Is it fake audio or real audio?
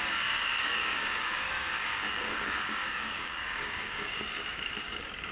fake